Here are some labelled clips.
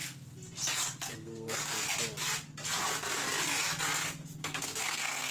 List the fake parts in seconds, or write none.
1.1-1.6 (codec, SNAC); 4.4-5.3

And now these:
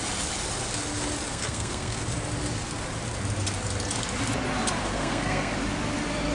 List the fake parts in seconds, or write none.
1.3-2.0 (codec, SNAC); 4.8-5.5